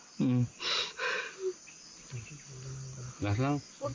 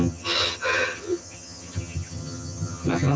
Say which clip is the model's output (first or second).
second